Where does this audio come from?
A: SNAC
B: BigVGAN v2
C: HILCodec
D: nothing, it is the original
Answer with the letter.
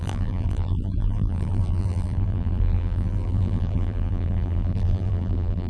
B